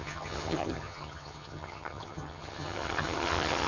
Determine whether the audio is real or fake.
fake